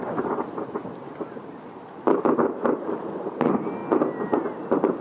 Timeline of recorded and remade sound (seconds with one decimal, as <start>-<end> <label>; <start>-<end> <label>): 0.0-5.0 recorded